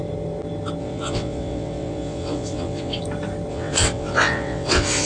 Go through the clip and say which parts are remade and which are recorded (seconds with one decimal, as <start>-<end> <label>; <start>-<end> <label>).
0.0-0.8 recorded; 0.8-3.0 remade; 3.0-3.5 recorded; 3.5-5.1 remade